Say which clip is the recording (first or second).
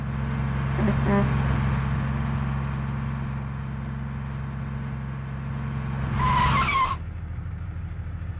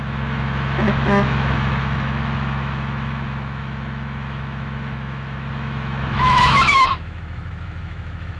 first